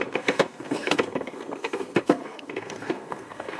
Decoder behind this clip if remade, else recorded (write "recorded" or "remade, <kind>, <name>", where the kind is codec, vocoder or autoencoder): remade, codec, SNAC